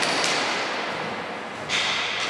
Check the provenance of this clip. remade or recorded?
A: recorded